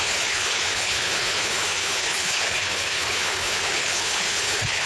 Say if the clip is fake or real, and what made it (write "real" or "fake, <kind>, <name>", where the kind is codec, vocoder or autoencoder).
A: fake, codec, HILCodec